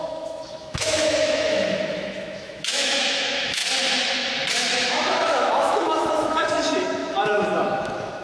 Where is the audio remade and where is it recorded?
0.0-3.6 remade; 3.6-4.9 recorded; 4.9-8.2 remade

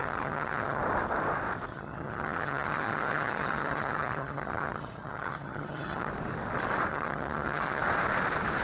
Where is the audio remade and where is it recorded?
0.0-0.8 remade; 0.8-1.7 recorded; 1.7-6.1 remade; 6.1-6.9 recorded; 6.9-7.8 remade; 7.8-8.6 recorded

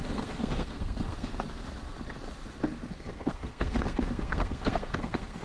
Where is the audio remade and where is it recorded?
0.0-1.3 remade; 1.3-2.9 recorded; 2.9-5.4 remade

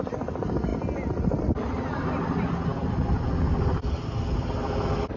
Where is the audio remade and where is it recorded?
0.0-5.2 recorded

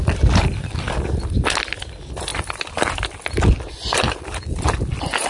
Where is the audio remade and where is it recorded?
0.0-5.3 recorded

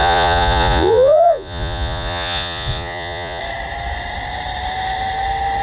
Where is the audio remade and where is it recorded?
0.0-3.4 remade; 3.4-5.6 recorded